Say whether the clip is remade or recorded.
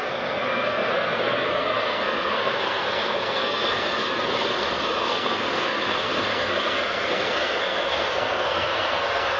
remade